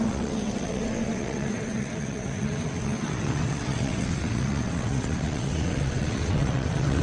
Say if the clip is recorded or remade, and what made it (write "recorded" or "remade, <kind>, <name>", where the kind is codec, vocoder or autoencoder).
remade, vocoder, WaveNeXt